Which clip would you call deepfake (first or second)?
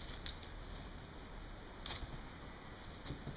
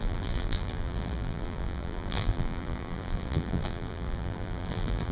second